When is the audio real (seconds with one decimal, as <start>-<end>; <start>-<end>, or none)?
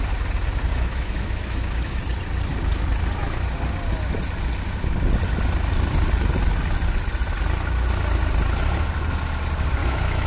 0.0-0.7; 2.0-9.8